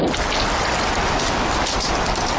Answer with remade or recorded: recorded